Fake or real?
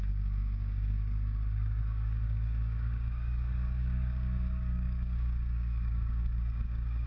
fake